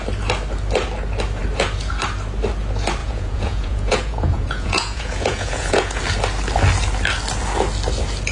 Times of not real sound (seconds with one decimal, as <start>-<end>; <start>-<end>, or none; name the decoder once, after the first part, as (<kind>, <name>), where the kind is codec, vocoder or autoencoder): 3.0-6.0 (vocoder, Vocos)